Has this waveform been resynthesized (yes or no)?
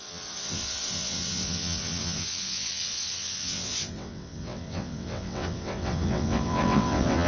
yes